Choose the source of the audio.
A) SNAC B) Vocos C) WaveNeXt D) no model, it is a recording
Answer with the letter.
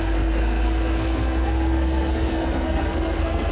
A